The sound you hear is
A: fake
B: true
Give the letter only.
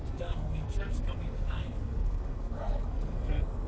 A